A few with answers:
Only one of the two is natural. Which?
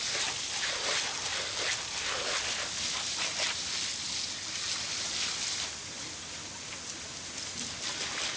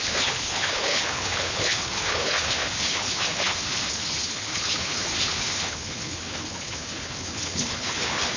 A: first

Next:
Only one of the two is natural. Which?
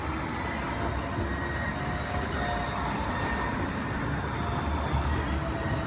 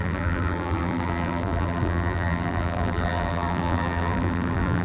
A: first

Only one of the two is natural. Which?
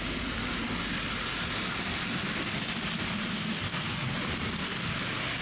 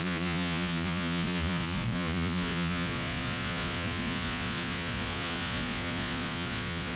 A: first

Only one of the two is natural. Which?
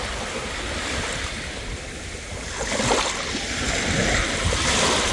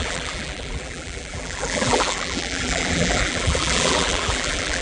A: first